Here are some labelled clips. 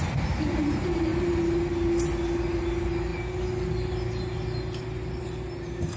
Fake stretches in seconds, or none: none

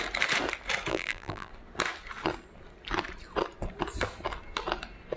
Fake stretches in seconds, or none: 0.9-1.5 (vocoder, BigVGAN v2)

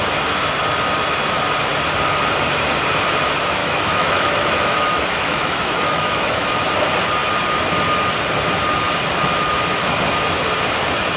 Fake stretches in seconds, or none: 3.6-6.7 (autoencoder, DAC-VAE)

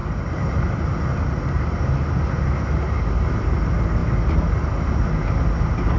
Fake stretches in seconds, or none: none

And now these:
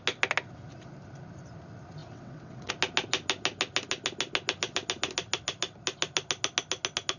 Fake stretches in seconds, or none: 2.0-2.7 (vocoder, WaveNeXt)

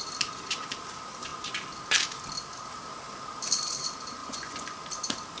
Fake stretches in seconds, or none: 4.2-4.8 (vocoder, Vocos)

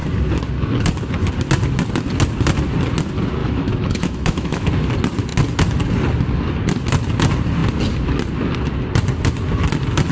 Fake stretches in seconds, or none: 3.4-4.7 (autoencoder, DAC-VAE)

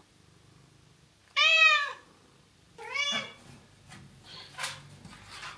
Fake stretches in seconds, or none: 1.2-4.6 (vocoder, BigVGAN v2)